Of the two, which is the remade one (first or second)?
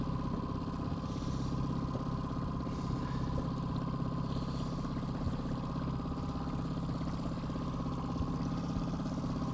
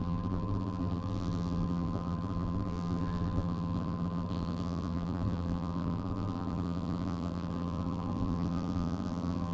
second